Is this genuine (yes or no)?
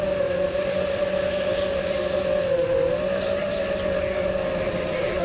yes